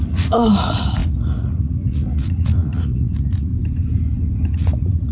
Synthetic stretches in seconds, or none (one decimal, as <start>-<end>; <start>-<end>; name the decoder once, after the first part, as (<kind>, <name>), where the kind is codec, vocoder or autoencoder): 0.0-3.5 (vocoder, Vocos); 4.5-5.1